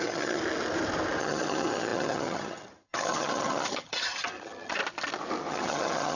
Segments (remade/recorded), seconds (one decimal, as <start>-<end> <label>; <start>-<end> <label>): 0.0-0.4 remade; 0.4-1.2 recorded; 1.2-4.8 remade; 4.8-5.5 recorded; 5.5-6.2 remade